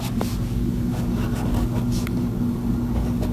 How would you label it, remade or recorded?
remade